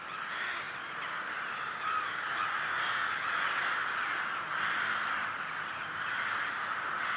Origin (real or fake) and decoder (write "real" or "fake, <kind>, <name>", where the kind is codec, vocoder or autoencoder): real